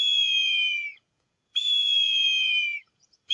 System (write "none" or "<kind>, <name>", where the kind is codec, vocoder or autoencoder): vocoder, Vocos